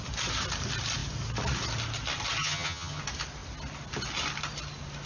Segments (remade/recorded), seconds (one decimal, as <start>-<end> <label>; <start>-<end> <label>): 0.0-2.4 recorded; 2.4-3.0 remade; 3.0-5.1 recorded